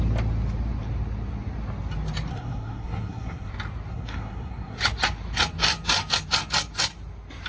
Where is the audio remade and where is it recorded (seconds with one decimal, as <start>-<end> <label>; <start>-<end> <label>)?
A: 0.0-2.3 recorded; 2.3-3.5 remade; 3.5-3.9 recorded; 3.9-4.8 remade; 4.8-7.5 recorded